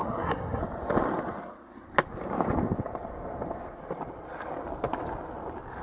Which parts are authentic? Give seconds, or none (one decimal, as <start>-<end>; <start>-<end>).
0.6-5.8